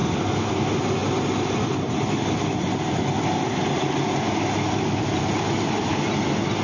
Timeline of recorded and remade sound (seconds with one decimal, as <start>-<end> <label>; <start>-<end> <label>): 0.0-6.6 recorded